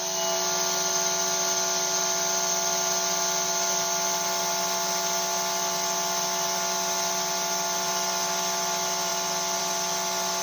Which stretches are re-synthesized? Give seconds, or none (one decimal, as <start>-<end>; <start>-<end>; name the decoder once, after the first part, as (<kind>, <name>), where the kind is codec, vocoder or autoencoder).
none